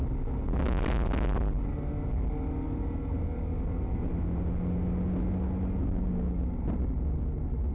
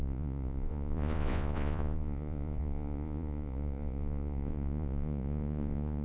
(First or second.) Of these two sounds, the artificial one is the second